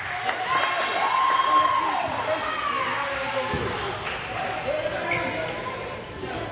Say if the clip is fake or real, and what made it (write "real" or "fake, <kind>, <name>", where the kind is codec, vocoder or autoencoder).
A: real